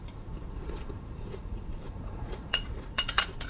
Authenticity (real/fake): fake